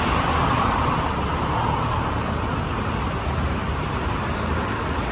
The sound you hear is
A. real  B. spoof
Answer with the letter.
A